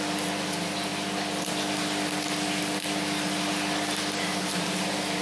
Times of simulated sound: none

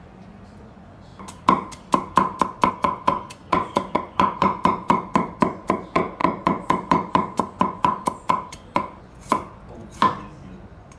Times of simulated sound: 0.0-1.1 (vocoder, Vocos); 2.7-11.0

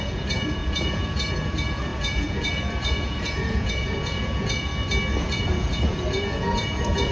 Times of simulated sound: 0.0-4.7 (vocoder, Vocos); 5.2-7.1

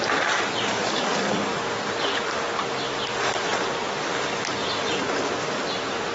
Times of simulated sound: 0.8-1.6 (codec, DAC)